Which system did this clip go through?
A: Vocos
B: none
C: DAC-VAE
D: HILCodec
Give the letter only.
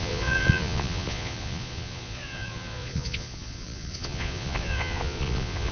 A